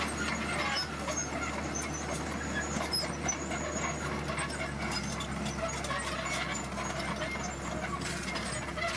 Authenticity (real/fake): real